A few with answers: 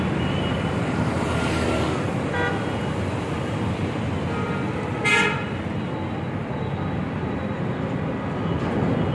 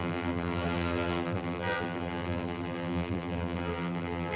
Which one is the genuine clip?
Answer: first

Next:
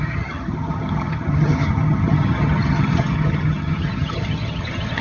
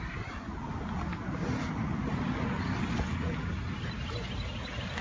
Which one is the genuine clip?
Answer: second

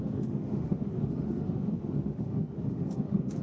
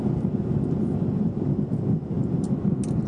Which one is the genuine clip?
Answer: second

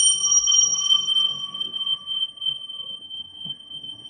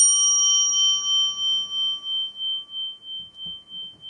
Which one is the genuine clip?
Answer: second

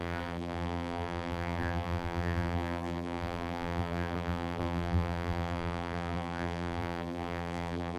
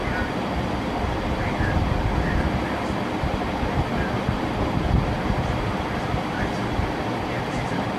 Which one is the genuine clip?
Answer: second